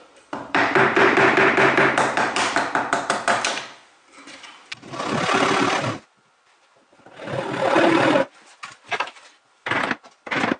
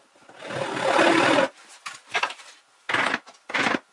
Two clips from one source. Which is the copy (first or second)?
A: first